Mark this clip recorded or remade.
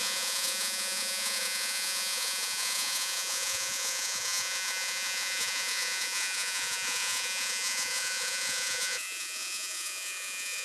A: remade